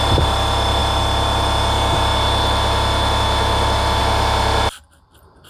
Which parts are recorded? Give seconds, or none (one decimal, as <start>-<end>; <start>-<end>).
none